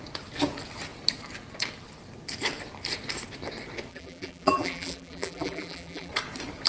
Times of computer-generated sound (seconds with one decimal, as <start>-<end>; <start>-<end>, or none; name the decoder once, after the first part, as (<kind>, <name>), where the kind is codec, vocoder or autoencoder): 3.9-6.1 (vocoder, BigVGAN v2)

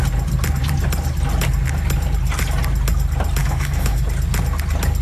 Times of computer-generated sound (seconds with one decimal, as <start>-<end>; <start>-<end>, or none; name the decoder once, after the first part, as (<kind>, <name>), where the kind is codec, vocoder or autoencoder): 3.4-4.0 (autoencoder, DAC-VAE)

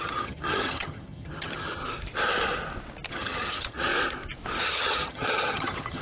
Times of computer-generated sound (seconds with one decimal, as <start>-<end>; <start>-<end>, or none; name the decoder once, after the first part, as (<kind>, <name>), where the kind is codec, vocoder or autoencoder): 0.0-1.8 (vocoder, HiFi-GAN); 3.1-3.9; 4.6-6.0

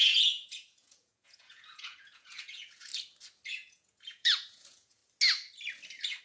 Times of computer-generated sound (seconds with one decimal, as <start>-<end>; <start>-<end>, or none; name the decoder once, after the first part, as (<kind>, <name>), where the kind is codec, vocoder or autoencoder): 0.0-2.9 (vocoder, Vocos); 3.5-5.0

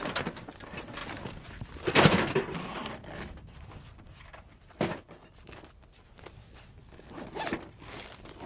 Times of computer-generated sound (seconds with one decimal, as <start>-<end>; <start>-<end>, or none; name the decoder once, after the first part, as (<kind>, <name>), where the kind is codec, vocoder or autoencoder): 1.0-5.0 (vocoder, BigVGAN v2)